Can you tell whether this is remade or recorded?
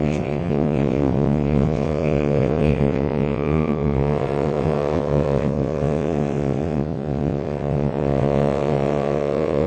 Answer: remade